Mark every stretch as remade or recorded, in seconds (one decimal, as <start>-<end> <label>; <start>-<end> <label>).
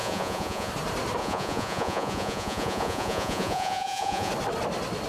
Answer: 0.0-0.7 remade; 0.7-1.2 recorded; 1.2-4.3 remade; 4.3-5.1 recorded